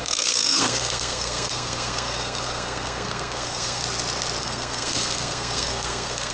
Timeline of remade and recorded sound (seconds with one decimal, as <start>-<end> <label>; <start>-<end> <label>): 0.0-3.8 remade; 3.8-4.4 recorded; 4.4-6.3 remade